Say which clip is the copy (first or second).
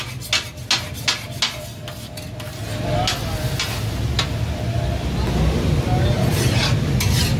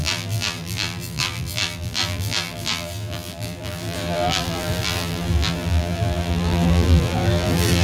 second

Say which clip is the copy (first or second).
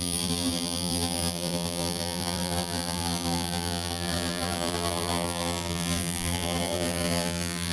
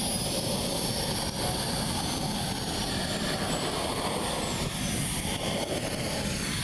first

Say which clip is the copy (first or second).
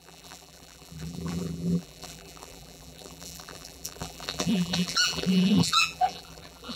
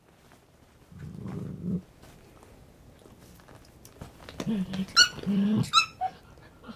first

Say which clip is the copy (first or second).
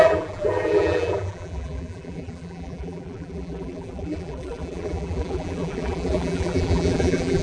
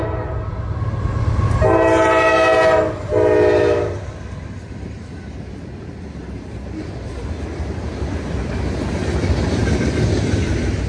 first